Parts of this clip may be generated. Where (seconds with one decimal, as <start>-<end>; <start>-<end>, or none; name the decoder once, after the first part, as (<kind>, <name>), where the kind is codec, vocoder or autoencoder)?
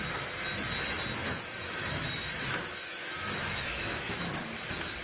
1.2-4.2 (autoencoder, DAC-VAE)